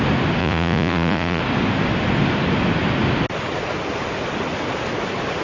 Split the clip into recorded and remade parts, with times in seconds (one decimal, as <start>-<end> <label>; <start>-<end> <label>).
0.0-0.4 recorded; 0.4-1.4 remade; 1.4-5.4 recorded